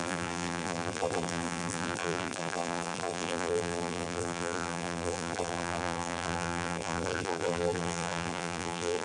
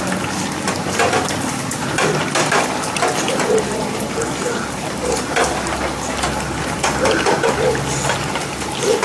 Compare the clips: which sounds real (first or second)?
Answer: second